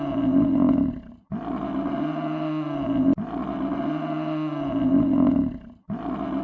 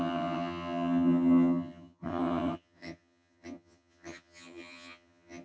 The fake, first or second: second